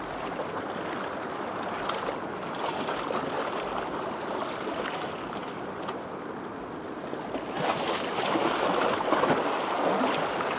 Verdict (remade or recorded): recorded